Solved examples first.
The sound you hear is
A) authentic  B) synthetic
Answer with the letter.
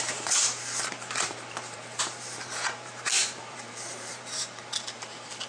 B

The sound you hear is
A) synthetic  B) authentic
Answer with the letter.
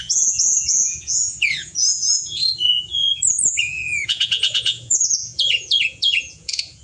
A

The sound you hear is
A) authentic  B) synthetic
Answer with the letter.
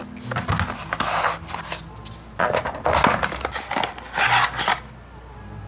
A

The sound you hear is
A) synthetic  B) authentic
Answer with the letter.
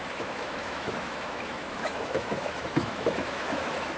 A